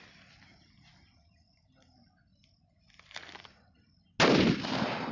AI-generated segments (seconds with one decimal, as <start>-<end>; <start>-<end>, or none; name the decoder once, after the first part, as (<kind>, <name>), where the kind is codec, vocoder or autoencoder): none